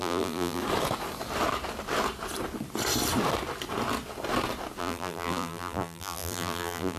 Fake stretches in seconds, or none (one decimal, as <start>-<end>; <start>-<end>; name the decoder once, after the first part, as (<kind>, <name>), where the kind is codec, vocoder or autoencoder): 0.0-0.6 (vocoder, BigVGAN v2); 4.8-7.0